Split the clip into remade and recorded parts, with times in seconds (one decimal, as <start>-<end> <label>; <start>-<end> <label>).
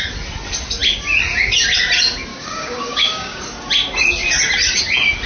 0.0-2.3 recorded; 2.3-3.4 remade; 3.4-5.3 recorded